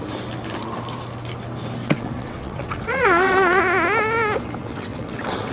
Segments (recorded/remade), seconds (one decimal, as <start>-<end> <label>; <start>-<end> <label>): 0.0-1.8 recorded; 1.8-3.6 remade; 3.6-4.6 recorded; 4.6-5.5 remade